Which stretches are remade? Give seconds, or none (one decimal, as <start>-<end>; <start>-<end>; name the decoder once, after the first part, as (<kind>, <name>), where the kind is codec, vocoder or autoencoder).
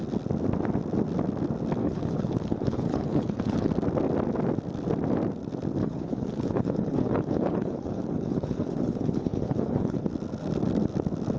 1.8-3.7 (codec, HILCodec); 5.8-10.1